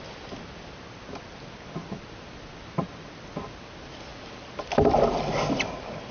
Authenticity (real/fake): real